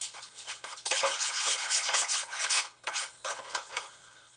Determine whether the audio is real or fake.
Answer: fake